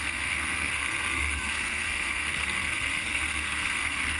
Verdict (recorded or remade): remade